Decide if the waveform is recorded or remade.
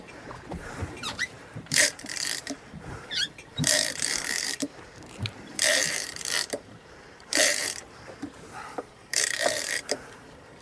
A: remade